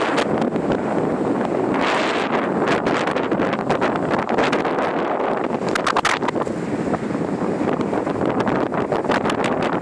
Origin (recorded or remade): recorded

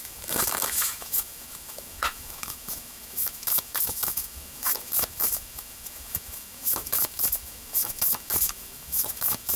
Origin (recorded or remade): remade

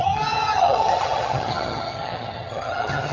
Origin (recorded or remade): remade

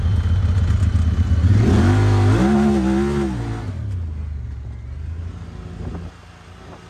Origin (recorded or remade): recorded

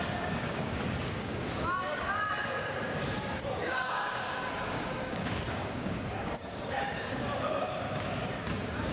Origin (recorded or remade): remade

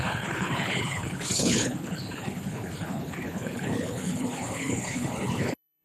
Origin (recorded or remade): remade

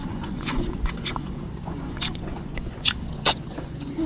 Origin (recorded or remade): remade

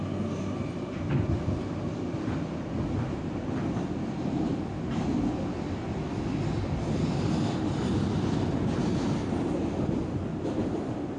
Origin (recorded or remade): recorded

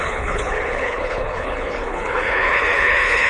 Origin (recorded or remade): remade